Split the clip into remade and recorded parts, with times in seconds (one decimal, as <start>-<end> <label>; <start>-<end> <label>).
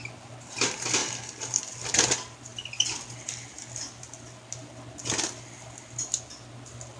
0.0-7.0 recorded